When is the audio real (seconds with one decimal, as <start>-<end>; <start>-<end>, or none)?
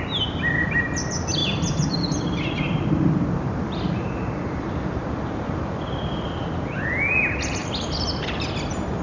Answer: 0.0-1.4; 5.8-7.6